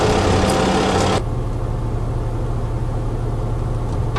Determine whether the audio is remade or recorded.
recorded